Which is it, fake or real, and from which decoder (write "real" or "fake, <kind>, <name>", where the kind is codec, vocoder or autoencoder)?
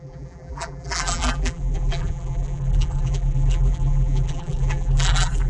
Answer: fake, vocoder, BigVGAN v2